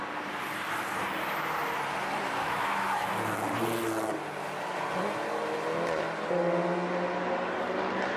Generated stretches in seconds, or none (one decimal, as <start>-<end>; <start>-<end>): 2.4-3.1